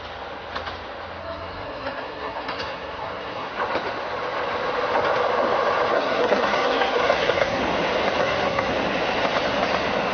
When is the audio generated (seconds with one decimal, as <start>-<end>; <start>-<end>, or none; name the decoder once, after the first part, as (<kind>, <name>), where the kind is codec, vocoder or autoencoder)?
1.2-3.5 (codec, SNAC); 5.9-7.6; 8.2-8.7